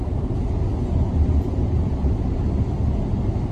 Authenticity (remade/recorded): recorded